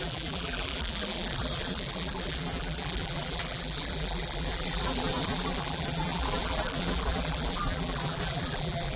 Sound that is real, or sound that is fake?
fake